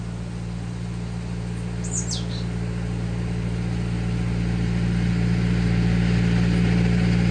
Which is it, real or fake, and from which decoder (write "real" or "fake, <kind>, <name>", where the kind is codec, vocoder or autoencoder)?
real